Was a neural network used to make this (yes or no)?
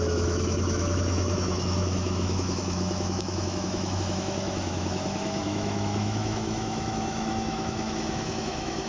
yes